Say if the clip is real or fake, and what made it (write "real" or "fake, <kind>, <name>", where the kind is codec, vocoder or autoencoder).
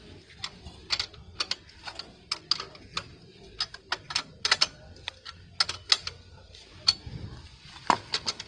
real